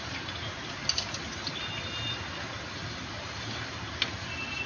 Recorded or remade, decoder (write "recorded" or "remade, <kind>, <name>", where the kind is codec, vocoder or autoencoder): recorded